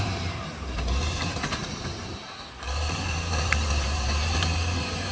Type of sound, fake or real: fake